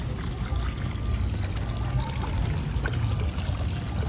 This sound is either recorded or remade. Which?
recorded